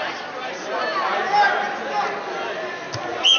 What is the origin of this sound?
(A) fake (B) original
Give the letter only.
B